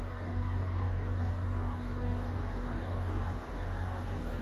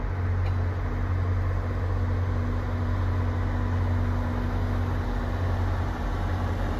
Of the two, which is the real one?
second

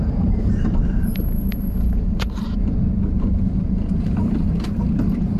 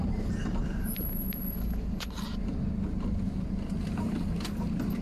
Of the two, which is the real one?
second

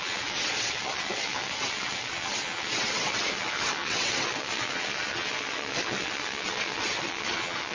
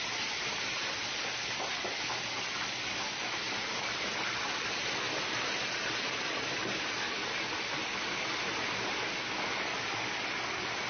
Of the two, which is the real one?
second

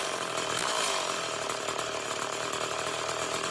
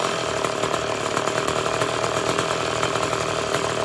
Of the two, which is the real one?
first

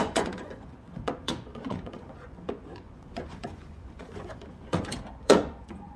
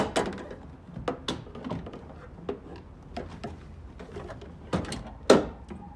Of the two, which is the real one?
second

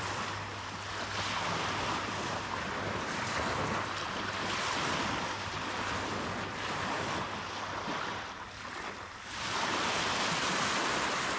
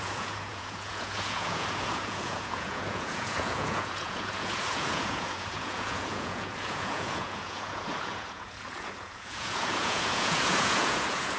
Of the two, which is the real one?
first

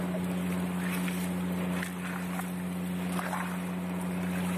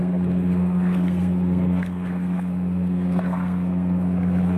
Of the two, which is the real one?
first